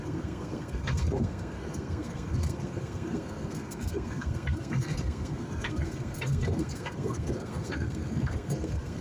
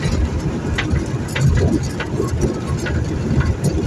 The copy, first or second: first